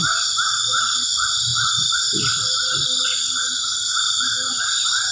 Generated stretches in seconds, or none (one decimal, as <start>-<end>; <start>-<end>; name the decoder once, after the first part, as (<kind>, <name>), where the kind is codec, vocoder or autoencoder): 0.8-1.5 (vocoder, BigVGAN v2); 4.6-5.1